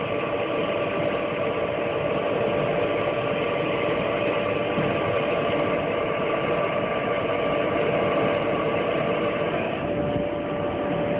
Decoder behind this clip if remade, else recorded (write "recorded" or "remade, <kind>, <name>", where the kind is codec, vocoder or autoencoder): recorded